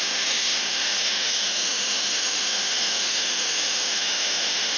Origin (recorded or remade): remade